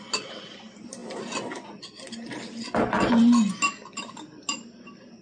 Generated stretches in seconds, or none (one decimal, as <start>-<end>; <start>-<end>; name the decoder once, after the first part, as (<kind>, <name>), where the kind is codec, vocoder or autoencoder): none